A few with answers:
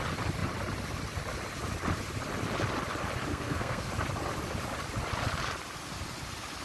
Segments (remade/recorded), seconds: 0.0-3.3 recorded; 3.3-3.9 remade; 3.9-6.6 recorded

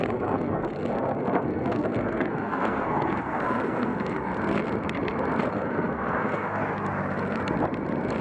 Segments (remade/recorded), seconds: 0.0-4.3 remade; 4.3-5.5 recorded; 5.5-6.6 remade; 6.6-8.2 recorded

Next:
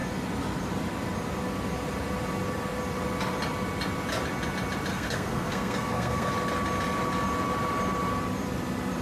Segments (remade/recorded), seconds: 0.0-4.9 recorded; 4.9-6.3 remade; 6.3-9.0 recorded

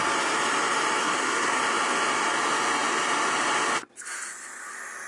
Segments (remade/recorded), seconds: 0.0-1.0 recorded; 1.0-1.6 remade; 1.6-5.1 recorded

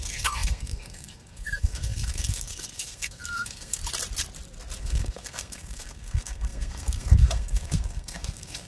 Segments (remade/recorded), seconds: 0.0-3.8 remade; 3.8-4.8 recorded; 4.8-8.7 remade